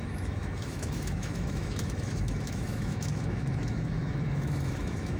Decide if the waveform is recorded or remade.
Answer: remade